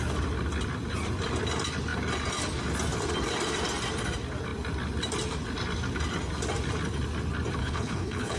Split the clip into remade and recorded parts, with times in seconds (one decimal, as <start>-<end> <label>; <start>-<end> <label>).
0.0-7.6 recorded; 7.6-8.4 remade